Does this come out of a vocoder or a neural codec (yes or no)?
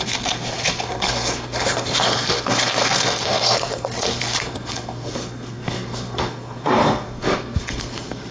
yes